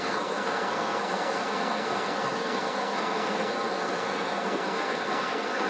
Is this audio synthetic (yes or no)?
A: yes